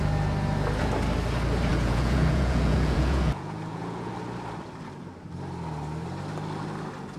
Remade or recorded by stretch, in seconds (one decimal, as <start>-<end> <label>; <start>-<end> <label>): 0.0-1.7 recorded; 1.7-4.1 remade; 4.1-7.2 recorded